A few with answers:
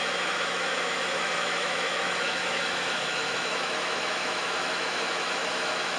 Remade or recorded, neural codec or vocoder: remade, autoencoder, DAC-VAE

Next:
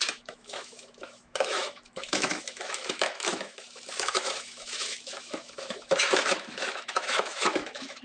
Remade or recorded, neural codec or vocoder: remade, autoencoder, DAC-VAE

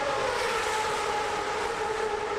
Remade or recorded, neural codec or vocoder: recorded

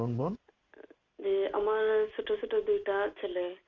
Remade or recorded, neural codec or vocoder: recorded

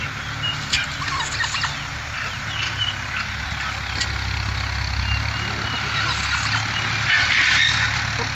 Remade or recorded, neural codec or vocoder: recorded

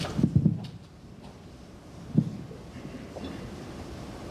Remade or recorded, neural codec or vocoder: recorded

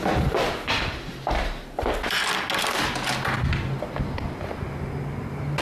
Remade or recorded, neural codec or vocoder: recorded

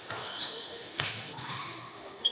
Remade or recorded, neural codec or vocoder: remade, autoencoder, DAC-VAE